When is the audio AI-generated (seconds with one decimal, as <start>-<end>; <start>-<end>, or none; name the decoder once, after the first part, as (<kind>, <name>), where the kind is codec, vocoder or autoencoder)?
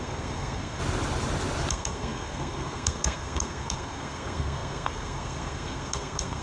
0.0-0.8 (codec, SNAC); 1.7-6.4